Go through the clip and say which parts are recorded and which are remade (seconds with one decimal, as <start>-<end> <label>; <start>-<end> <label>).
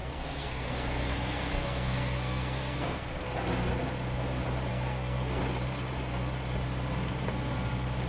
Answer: 0.0-3.1 remade; 3.1-4.7 recorded; 4.7-5.4 remade; 5.4-8.1 recorded